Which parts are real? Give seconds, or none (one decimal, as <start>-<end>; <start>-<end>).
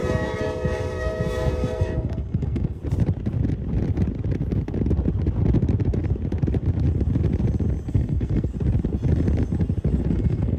2.8-7.9; 8.5-10.1